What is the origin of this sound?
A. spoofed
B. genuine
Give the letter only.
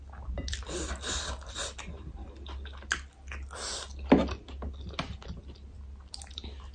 B